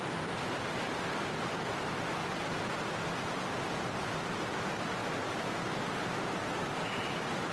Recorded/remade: recorded